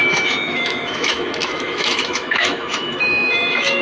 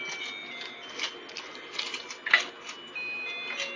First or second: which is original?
second